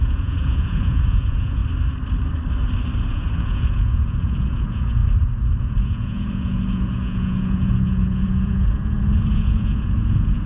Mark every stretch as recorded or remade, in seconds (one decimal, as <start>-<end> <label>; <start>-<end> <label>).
0.0-1.6 remade; 1.6-3.1 recorded; 3.1-5.0 remade; 5.0-5.6 recorded; 5.6-10.5 remade